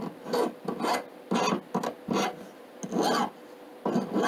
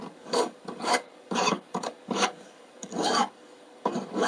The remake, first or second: second